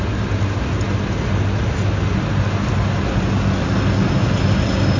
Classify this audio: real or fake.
real